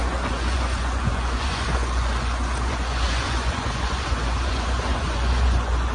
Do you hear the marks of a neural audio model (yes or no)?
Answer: yes